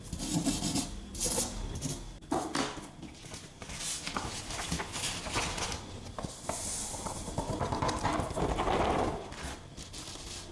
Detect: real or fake real